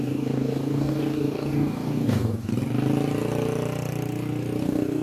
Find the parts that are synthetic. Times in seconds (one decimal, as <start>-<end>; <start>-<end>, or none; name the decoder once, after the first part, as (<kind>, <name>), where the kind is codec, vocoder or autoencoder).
0.0-2.5 (codec, DAC); 4.6-5.0